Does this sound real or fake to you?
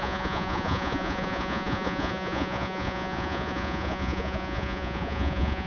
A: fake